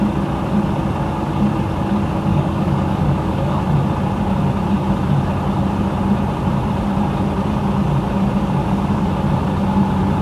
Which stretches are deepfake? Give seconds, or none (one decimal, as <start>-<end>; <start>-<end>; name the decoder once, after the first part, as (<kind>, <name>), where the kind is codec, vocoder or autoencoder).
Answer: 2.3-3.6 (codec, DAC); 8.6-9.1